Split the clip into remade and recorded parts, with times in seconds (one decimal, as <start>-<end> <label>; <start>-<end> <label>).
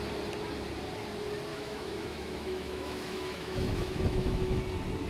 0.0-1.5 recorded; 1.5-4.6 remade; 4.6-5.1 recorded